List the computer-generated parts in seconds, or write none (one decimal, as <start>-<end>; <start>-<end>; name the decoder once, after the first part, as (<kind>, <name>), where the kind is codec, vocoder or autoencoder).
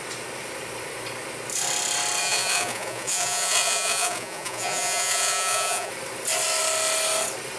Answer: 2.2-5.9 (vocoder, Vocos)